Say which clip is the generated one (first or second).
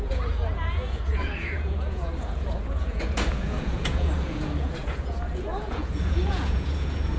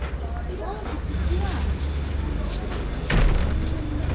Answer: first